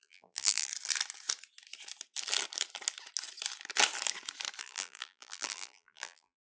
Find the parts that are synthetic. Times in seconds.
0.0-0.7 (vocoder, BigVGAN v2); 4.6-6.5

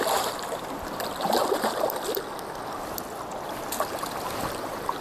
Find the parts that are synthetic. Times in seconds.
0.0-1.4 (vocoder, BigVGAN v2); 4.4-5.0

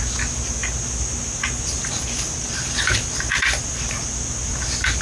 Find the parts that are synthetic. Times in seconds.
none

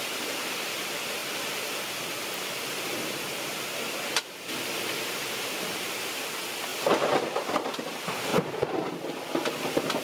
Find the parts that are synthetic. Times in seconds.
8.3-8.9 (vocoder, BigVGAN v2)

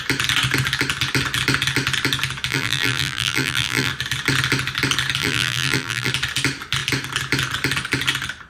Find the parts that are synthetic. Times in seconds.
2.5-3.9 (vocoder, BigVGAN v2); 5.2-6.1

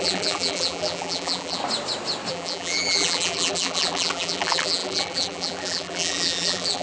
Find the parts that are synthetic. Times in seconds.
0.0-1.6 (vocoder, BigVGAN v2); 2.3-6.8

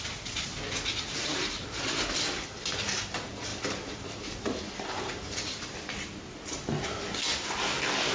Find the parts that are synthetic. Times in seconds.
1.2-3.1 (vocoder, BigVGAN v2); 3.5-6.2

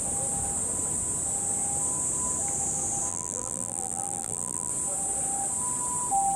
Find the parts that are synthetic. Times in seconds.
3.1-4.7 (vocoder, BigVGAN v2)